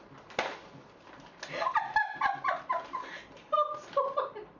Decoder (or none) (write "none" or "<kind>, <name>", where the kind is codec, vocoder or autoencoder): none